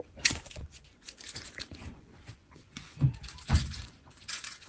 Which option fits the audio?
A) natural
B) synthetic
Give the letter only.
B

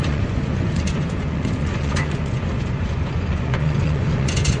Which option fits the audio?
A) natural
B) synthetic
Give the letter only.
B